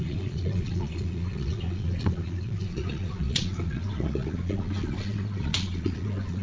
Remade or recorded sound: remade